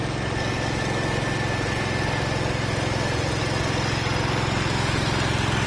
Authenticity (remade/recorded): recorded